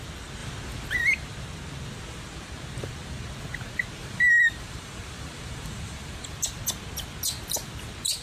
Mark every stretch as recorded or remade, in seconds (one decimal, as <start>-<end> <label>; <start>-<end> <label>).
0.0-4.0 recorded; 4.0-6.2 remade; 6.2-8.2 recorded